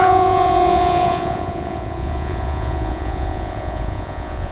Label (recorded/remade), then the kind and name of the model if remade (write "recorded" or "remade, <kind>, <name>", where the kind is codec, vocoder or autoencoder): remade, vocoder, Vocos